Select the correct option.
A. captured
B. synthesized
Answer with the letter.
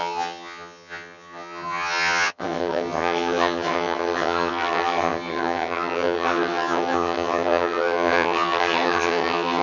B